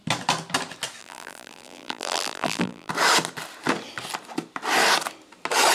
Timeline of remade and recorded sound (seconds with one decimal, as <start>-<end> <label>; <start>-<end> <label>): 0.0-1.0 recorded; 1.0-2.9 remade; 2.9-5.7 recorded

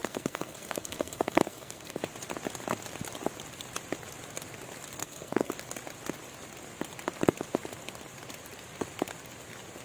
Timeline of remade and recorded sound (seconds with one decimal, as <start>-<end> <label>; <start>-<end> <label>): 0.0-2.0 remade; 2.0-5.0 recorded; 5.0-5.5 remade; 5.5-9.8 recorded